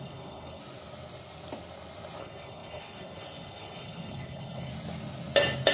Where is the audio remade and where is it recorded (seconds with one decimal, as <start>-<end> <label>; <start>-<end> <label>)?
0.0-0.6 remade; 0.6-2.2 recorded; 2.2-4.7 remade; 4.7-5.7 recorded